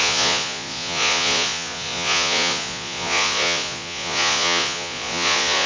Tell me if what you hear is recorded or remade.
remade